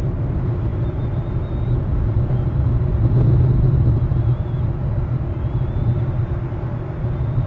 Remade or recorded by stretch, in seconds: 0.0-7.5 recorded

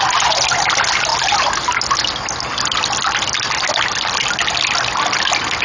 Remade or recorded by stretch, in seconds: 0.0-5.6 recorded

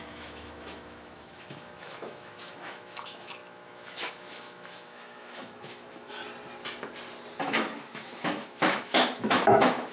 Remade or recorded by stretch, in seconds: 0.0-6.2 remade; 6.2-7.4 recorded; 7.4-9.9 remade

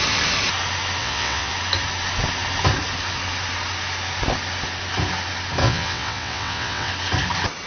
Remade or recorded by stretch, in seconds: 0.0-1.0 recorded; 1.0-1.5 remade; 1.5-5.6 recorded; 5.6-6.9 remade; 6.9-7.7 recorded

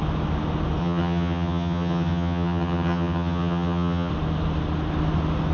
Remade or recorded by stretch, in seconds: 0.0-0.8 recorded; 0.8-4.1 remade; 4.1-5.5 recorded

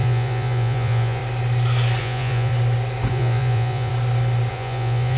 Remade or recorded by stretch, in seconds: 0.0-1.2 remade; 1.2-2.0 recorded; 2.0-2.5 remade; 2.5-3.1 recorded; 3.1-3.9 remade; 3.9-4.5 recorded; 4.5-5.2 remade

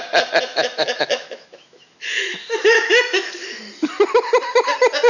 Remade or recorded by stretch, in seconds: 0.0-0.5 recorded; 0.5-3.6 remade; 3.6-5.1 recorded